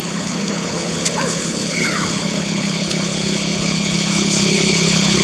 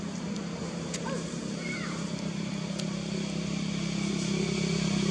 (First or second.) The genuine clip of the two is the second